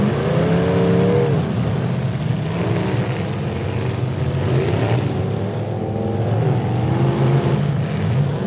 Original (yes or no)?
yes